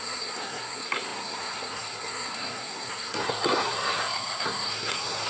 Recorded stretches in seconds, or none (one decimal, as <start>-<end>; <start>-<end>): none